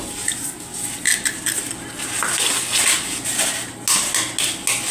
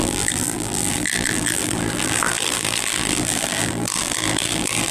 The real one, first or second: first